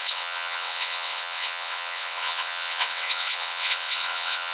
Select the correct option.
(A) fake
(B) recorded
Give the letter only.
A